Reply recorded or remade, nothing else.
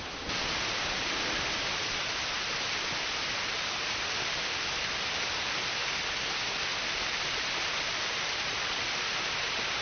recorded